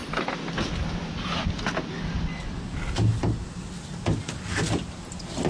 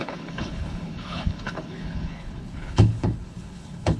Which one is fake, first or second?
second